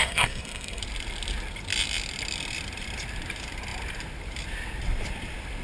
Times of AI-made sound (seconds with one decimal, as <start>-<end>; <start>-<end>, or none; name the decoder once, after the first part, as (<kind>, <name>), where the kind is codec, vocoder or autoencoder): 0.0-0.8 (codec, SNAC)